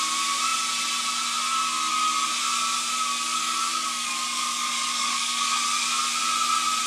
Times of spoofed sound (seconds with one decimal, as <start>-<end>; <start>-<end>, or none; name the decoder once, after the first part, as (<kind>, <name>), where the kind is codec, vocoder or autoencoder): 3.3-5.6 (codec, DAC)